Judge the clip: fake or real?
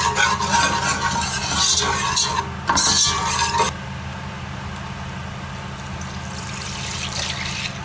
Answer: real